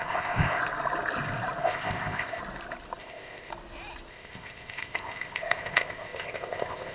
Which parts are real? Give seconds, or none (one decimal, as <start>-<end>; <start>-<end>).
0.6-1.6; 2.4-3.0; 3.5-4.1